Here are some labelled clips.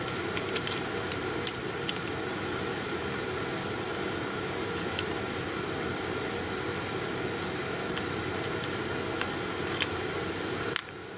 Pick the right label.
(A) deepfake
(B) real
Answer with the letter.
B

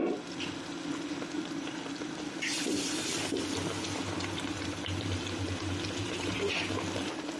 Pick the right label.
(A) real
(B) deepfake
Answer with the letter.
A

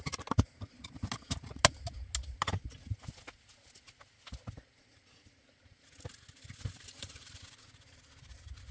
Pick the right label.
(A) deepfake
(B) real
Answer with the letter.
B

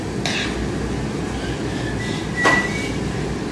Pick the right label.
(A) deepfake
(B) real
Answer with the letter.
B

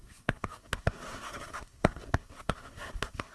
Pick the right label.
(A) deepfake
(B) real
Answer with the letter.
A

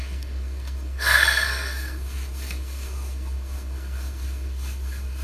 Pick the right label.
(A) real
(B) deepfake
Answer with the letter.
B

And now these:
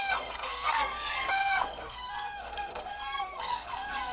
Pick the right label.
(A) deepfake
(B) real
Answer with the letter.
A